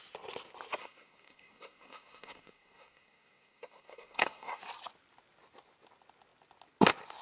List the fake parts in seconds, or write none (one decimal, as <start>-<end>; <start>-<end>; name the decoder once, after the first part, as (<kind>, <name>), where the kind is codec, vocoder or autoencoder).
0.8-4.6 (codec, SNAC)